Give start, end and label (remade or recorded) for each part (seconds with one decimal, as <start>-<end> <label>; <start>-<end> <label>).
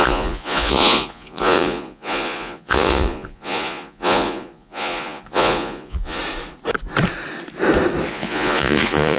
0.0-6.2 remade; 6.2-8.1 recorded; 8.1-9.2 remade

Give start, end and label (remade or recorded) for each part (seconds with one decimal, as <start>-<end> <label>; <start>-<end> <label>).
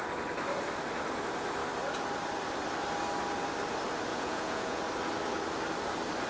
0.0-4.1 recorded; 4.1-4.8 remade; 4.8-6.3 recorded